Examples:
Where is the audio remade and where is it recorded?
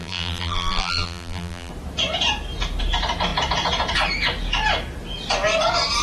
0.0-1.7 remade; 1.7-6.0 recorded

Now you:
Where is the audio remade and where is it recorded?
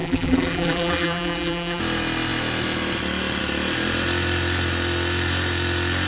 0.0-1.8 remade; 1.8-6.1 recorded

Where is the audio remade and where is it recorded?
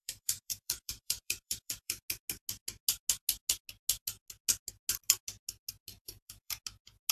0.0-2.0 remade; 2.0-5.9 recorded; 5.9-6.6 remade; 6.6-7.1 recorded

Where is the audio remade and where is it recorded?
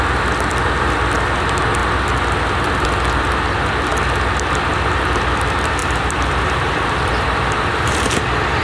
0.0-5.8 recorded; 5.8-8.2 remade; 8.2-8.6 recorded